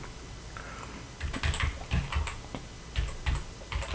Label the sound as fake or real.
real